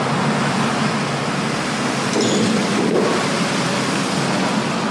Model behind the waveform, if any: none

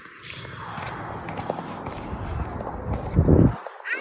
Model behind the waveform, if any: none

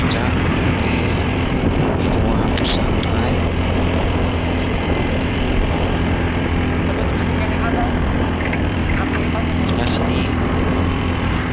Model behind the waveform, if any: vocoder, BigVGAN v2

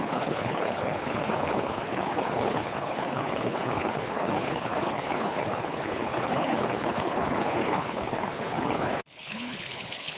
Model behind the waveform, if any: codec, HILCodec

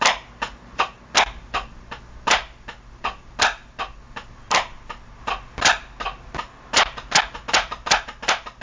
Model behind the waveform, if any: none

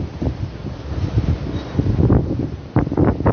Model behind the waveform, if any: none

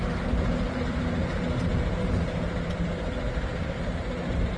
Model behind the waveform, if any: none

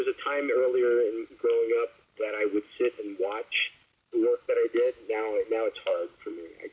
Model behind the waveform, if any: none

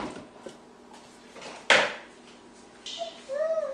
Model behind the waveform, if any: none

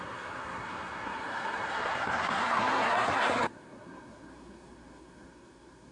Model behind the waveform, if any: codec, SNAC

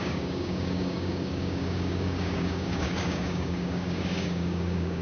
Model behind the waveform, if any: codec, DAC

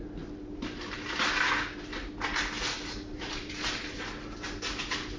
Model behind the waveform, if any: none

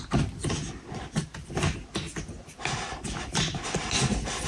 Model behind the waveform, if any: none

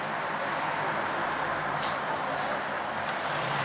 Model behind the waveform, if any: none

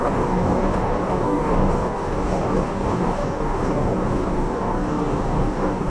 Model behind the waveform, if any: codec, DAC